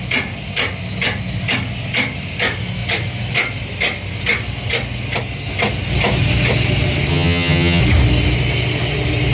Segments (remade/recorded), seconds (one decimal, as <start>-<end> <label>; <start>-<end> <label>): 0.0-7.1 recorded; 7.1-7.8 remade; 7.8-9.3 recorded